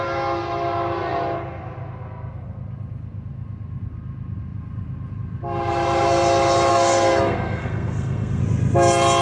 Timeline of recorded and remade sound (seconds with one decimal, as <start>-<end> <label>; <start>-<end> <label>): 0.0-6.7 recorded; 6.7-8.4 remade; 8.4-9.2 recorded